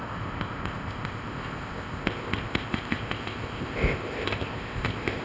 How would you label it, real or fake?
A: fake